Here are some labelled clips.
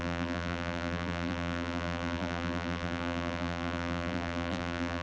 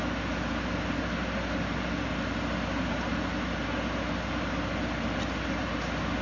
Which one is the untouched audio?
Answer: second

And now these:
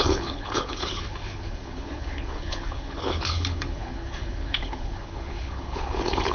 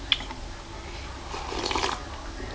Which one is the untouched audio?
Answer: second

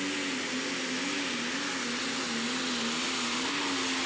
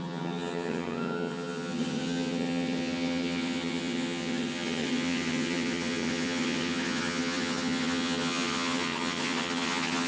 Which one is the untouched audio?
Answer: first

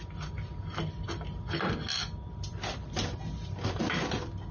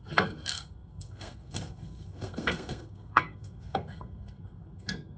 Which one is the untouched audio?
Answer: first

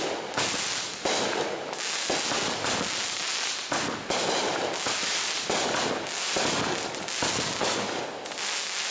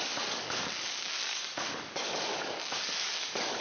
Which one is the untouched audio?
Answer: first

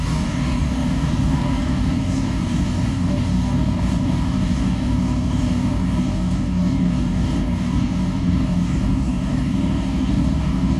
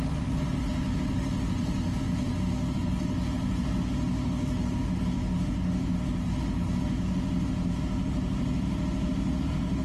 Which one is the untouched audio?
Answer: second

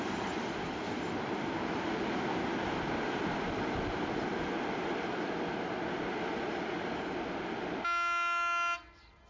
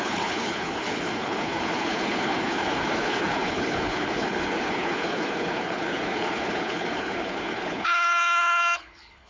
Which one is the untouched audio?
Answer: first